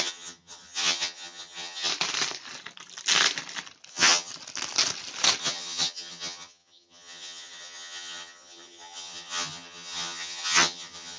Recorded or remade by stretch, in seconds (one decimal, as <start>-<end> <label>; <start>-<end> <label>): 0.0-1.9 remade; 1.9-3.9 recorded; 3.9-4.3 remade; 4.3-5.4 recorded; 5.4-11.2 remade